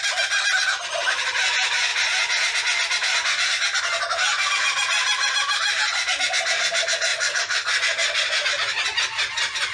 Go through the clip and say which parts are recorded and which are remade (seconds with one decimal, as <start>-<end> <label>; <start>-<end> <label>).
0.0-7.1 recorded; 7.1-7.8 remade; 7.8-9.7 recorded